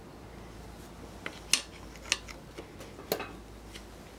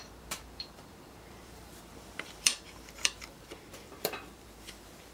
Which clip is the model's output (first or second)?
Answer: second